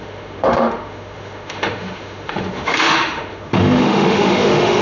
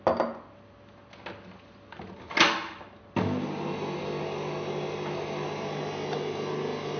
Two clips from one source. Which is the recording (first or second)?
second